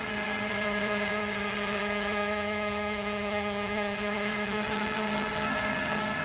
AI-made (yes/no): yes